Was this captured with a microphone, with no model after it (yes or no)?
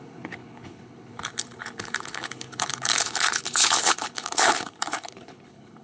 no